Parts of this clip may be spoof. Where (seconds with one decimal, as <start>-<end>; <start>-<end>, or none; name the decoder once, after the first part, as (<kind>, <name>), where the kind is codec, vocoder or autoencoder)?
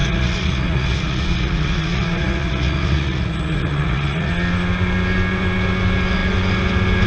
0.0-4.3 (vocoder, Vocos)